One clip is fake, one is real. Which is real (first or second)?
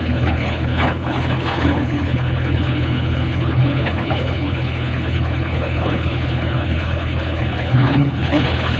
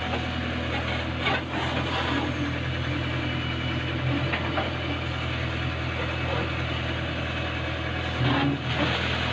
second